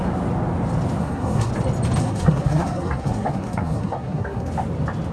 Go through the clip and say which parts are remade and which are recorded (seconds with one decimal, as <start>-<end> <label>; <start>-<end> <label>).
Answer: 0.0-1.0 recorded; 1.0-1.5 remade; 1.5-2.0 recorded; 2.0-4.5 remade; 4.5-5.1 recorded